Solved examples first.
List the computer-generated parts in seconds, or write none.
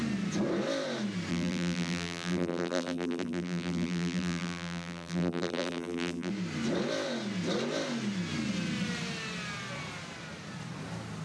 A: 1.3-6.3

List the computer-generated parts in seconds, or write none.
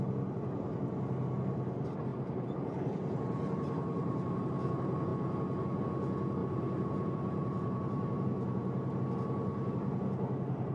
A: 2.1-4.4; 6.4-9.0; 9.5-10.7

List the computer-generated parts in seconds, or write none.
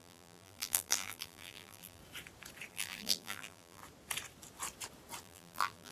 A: 0.0-2.0; 2.7-3.8; 5.2-5.9